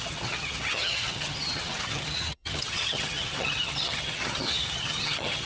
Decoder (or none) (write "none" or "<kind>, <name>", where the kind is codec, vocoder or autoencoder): vocoder, HiFi-GAN